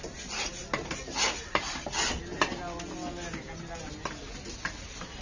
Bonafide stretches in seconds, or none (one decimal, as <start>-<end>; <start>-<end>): 0.0-5.2